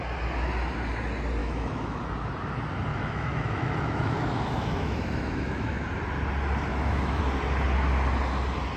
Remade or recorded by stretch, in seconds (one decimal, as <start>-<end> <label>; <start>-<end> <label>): 0.0-1.4 recorded; 1.4-2.0 remade; 2.0-2.9 recorded; 2.9-5.8 remade; 5.8-6.7 recorded; 6.7-7.2 remade; 7.2-8.8 recorded